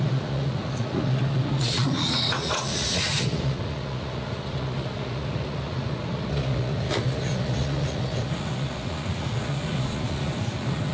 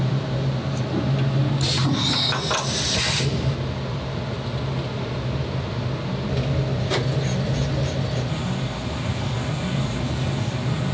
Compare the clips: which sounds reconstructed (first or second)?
first